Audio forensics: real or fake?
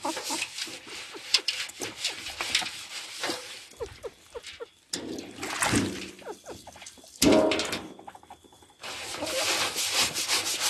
real